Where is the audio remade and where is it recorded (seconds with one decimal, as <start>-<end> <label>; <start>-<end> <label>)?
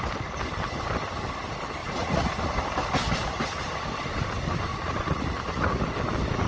0.0-1.8 recorded; 1.8-2.3 remade; 2.3-4.7 recorded; 4.7-5.9 remade; 5.9-6.5 recorded